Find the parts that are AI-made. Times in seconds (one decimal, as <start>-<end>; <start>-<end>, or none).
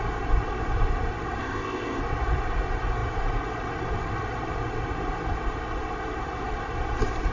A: 1.4-2.0